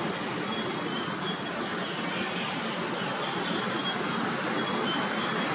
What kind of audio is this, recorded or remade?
recorded